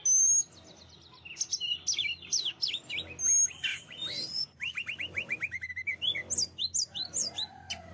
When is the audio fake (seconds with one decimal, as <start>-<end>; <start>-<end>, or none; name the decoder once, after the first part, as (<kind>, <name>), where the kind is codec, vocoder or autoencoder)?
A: 3.7-5.7 (vocoder, BigVGAN v2); 7.2-7.9